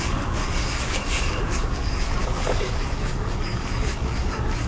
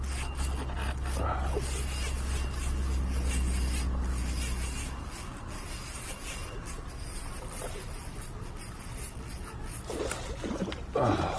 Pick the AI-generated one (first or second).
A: first